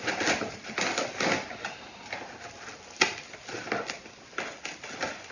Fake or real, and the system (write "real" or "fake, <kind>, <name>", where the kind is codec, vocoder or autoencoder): real